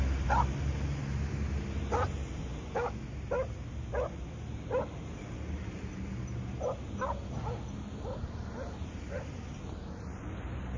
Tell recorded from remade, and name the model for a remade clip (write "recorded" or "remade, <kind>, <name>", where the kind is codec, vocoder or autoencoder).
recorded